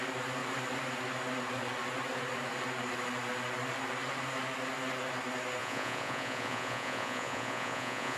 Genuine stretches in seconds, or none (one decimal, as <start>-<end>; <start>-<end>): 0.0-5.6